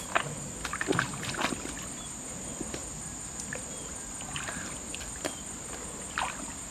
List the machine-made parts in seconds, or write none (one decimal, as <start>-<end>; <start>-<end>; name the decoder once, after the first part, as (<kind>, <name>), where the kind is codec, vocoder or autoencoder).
none

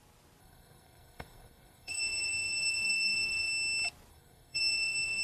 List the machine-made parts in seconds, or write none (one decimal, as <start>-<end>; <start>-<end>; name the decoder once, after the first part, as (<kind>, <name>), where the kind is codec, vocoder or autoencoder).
0.4-3.5 (codec, SNAC); 4.1-5.2

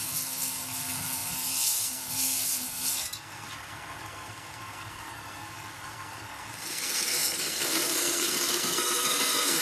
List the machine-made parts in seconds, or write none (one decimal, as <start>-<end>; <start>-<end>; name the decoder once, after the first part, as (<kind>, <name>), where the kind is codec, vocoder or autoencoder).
0.0-9.6 (codec, SNAC)

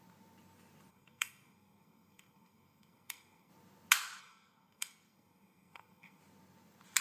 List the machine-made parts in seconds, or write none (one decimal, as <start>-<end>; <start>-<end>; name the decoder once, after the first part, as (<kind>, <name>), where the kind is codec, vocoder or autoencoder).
0.9-3.5 (codec, SNAC); 4.2-6.2

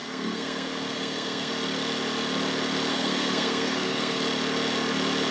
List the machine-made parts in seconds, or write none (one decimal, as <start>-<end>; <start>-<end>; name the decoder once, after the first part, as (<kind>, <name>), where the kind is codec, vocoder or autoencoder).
0.0-1.5 (codec, SNAC); 2.9-4.2

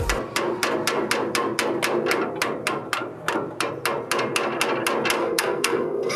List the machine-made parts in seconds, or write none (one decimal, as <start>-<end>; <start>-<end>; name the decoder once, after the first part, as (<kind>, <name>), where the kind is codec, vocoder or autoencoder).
5.2-6.2 (codec, SNAC)